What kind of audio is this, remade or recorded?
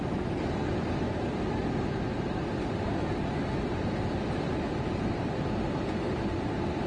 recorded